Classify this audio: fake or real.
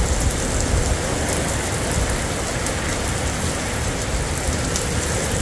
real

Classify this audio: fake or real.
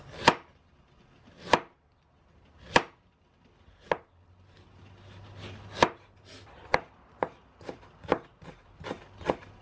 real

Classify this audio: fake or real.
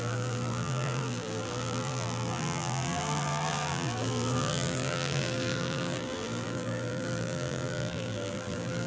fake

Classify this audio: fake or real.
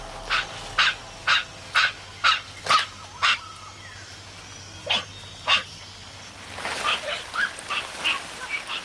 real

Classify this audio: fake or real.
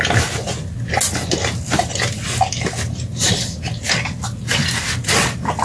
real